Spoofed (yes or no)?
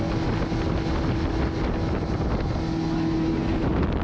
no